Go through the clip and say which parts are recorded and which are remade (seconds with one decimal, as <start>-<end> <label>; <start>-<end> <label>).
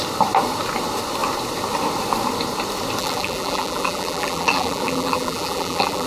0.0-3.0 recorded; 3.0-6.1 remade